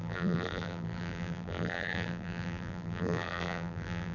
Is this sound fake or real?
fake